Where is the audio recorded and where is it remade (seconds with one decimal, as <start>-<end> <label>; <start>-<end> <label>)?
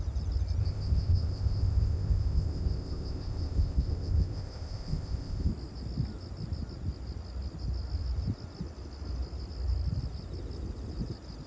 0.0-0.6 recorded; 0.6-5.5 remade; 5.5-11.5 recorded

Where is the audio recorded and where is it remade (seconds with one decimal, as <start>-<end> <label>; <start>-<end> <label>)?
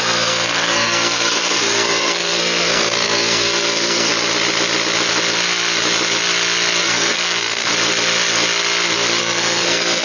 0.0-4.1 remade; 4.1-6.8 recorded; 6.8-7.7 remade; 7.7-9.2 recorded; 9.2-10.0 remade